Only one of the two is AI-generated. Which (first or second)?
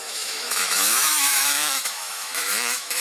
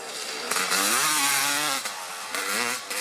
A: first